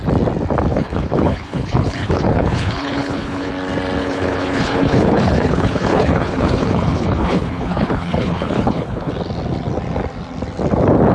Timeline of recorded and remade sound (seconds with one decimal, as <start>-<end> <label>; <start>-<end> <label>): 0.0-0.7 recorded; 0.7-3.5 remade; 3.5-4.0 recorded; 4.0-9.1 remade; 9.1-11.1 recorded